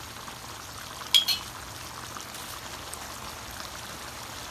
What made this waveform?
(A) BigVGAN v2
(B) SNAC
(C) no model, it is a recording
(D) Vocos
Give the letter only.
C